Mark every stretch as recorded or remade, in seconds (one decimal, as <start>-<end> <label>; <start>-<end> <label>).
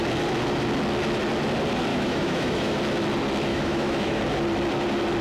0.0-1.9 recorded; 1.9-2.8 remade; 2.8-3.5 recorded; 3.5-4.2 remade; 4.2-5.2 recorded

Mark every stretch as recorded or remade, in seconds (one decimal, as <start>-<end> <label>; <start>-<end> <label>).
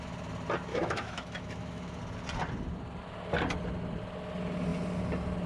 0.0-0.7 recorded; 0.7-2.0 remade; 2.0-5.5 recorded